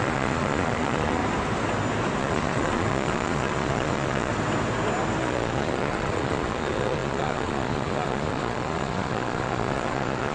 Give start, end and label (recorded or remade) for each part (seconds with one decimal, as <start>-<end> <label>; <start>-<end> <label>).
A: 0.0-1.2 remade; 1.2-2.2 recorded; 2.2-4.3 remade; 4.3-5.2 recorded; 5.2-10.3 remade